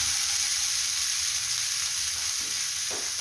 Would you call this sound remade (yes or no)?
no